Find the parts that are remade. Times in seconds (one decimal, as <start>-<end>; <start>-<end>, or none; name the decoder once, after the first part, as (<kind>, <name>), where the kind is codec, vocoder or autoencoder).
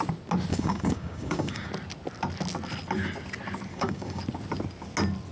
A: 0.5-1.7 (codec, DAC); 3.7-4.2